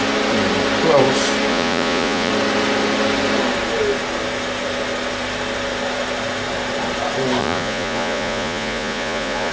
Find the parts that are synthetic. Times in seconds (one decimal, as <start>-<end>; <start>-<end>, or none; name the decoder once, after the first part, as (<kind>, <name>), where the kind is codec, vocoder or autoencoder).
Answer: 1.5-2.3 (vocoder, Vocos); 7.4-9.5